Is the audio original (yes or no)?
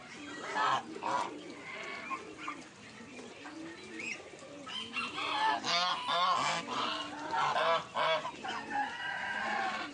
yes